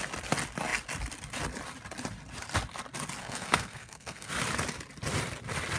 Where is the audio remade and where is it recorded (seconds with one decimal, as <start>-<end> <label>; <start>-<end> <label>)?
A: 0.0-3.2 recorded; 3.2-4.3 remade; 4.3-5.8 recorded